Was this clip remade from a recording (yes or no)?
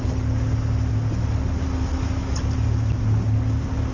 no